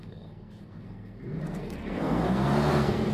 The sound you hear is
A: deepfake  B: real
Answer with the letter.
A